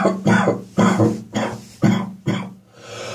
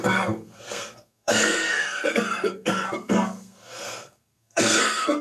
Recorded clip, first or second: first